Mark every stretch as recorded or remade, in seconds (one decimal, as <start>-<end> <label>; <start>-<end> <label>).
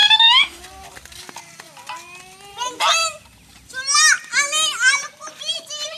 0.0-0.6 remade; 0.6-6.0 recorded